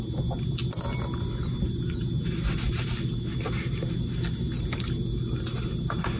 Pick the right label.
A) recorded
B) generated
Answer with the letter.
A